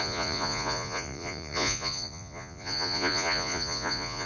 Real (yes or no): no